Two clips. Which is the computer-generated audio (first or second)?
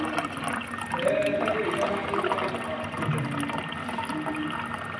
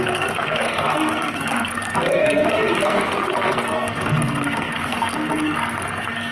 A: second